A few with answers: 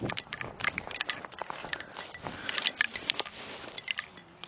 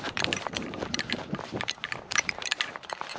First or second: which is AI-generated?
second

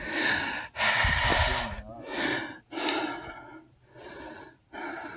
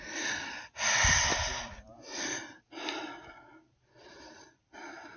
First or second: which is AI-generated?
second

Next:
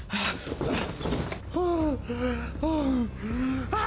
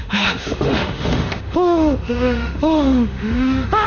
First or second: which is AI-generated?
second